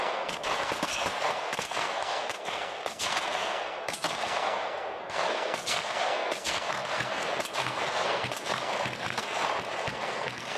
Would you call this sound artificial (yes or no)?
yes